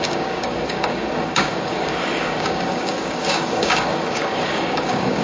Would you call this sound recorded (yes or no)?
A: no